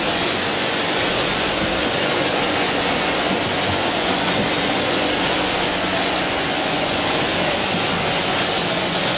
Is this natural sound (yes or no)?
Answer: no